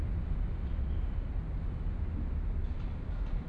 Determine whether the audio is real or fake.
real